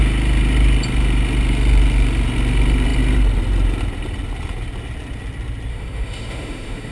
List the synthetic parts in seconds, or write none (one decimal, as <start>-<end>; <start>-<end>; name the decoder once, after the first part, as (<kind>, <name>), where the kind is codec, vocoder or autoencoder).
5.7-6.9 (autoencoder, DAC-VAE)